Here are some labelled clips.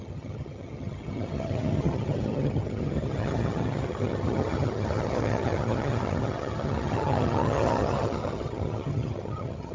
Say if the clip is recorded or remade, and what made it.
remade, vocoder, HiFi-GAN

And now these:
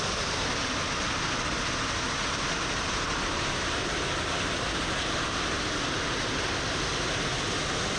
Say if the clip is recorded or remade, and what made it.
recorded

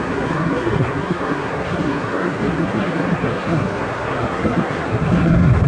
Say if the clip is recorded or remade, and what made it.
remade, codec, SNAC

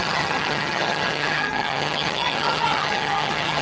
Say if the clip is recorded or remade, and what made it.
remade, vocoder, HiFi-GAN